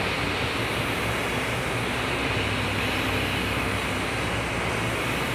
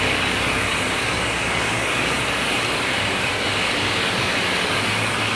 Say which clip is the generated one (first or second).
second